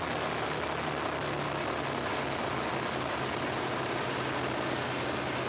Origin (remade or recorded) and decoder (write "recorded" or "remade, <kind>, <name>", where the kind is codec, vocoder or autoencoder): recorded